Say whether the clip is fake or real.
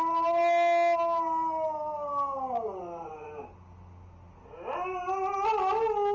real